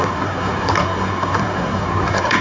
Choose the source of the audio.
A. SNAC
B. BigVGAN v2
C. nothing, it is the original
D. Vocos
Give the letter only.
A